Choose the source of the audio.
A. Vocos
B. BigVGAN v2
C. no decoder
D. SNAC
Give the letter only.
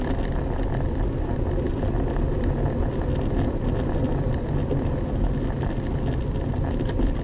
C